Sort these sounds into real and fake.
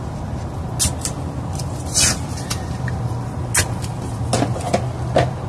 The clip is real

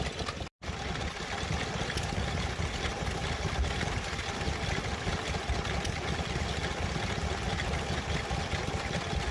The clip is real